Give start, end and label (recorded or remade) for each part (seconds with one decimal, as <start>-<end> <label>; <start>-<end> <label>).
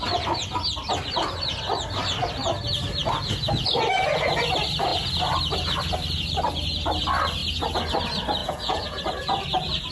0.0-8.4 recorded; 8.4-9.0 remade; 9.0-9.9 recorded